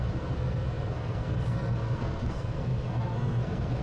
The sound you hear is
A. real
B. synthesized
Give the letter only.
B